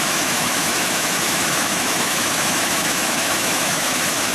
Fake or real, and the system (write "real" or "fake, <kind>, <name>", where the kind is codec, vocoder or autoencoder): fake, autoencoder, DAC-VAE